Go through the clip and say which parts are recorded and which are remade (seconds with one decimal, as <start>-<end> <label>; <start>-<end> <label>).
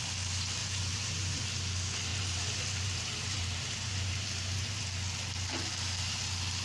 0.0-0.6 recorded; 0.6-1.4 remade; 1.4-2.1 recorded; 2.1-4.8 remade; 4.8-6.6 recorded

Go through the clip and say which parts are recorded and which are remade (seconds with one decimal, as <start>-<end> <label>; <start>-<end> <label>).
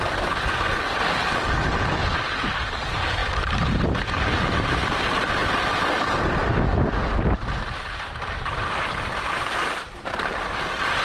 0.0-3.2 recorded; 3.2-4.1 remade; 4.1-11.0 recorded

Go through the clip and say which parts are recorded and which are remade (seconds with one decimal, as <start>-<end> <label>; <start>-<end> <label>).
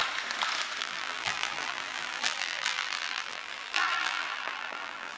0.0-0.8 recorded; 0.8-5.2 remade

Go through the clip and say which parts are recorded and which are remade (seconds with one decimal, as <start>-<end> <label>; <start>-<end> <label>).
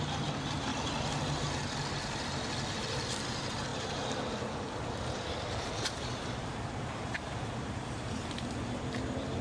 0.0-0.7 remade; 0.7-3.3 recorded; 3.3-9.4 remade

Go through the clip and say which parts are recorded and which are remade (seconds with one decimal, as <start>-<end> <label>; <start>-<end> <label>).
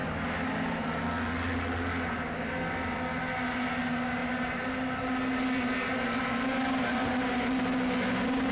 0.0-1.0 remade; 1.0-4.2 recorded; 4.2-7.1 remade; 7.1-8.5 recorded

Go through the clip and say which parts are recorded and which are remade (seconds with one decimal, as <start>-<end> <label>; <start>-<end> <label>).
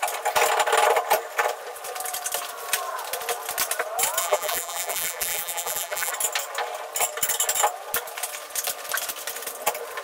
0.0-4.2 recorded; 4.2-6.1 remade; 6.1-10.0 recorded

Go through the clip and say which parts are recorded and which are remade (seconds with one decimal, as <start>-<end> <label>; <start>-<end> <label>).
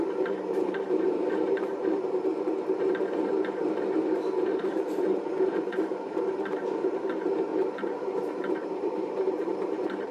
0.0-2.3 remade; 2.3-4.6 recorded; 4.6-7.5 remade; 7.5-8.1 recorded; 8.1-10.1 remade